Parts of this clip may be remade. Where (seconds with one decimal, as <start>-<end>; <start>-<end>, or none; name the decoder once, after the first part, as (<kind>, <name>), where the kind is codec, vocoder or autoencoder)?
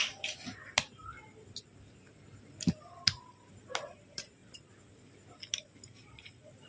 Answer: 3.5-4.4 (vocoder, BigVGAN v2); 5.5-6.7